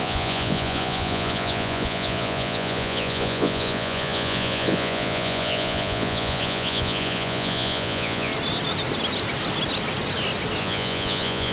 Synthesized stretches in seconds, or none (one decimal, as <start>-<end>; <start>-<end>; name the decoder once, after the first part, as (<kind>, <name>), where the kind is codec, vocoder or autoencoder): 0.0-8.3 (vocoder, Vocos); 10.6-11.5